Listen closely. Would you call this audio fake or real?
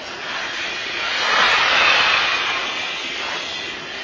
real